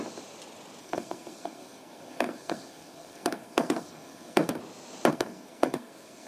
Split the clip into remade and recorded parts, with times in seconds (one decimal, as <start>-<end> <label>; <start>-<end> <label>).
0.0-0.8 recorded; 0.8-4.6 remade; 4.6-5.1 recorded; 5.1-6.3 remade